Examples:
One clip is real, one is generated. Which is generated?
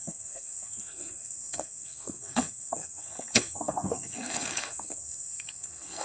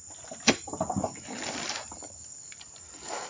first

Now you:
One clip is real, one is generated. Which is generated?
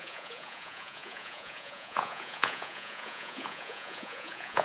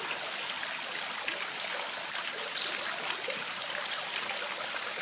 first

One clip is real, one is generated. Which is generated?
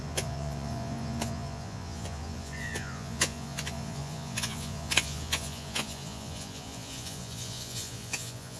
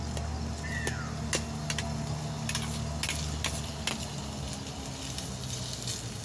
first